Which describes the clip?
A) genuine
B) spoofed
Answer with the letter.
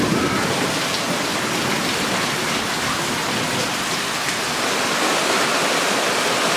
A